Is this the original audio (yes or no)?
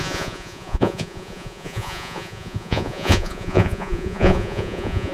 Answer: no